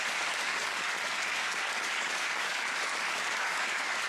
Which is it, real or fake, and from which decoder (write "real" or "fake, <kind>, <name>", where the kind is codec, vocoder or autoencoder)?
fake, codec, DAC